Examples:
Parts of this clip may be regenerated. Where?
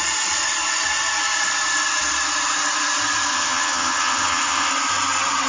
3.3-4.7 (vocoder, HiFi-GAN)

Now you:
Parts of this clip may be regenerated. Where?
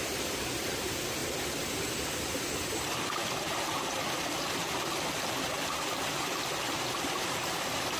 none